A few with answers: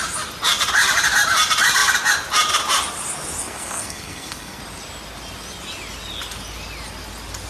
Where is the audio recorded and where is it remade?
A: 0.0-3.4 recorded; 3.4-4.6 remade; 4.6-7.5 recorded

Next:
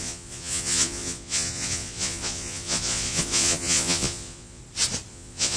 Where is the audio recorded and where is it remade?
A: 0.0-4.6 remade; 4.6-5.1 recorded; 5.1-5.6 remade